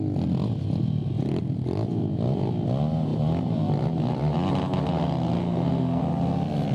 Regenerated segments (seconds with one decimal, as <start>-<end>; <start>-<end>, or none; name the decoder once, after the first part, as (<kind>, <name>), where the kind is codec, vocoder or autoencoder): 5.4-6.0 (codec, SNAC)